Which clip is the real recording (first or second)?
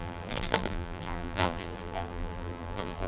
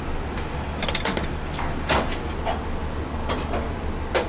second